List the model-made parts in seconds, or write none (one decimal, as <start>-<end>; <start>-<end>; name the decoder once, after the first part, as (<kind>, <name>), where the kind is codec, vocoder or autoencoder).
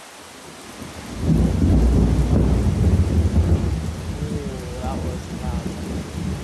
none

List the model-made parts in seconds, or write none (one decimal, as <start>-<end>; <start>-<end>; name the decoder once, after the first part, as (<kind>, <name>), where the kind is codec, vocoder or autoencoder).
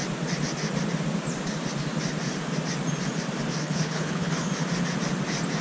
3.6-4.5 (codec, HILCodec)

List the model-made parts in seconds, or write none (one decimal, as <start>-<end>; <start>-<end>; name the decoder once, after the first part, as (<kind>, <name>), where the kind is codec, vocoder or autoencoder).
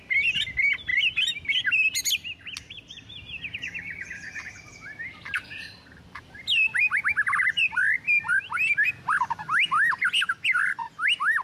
none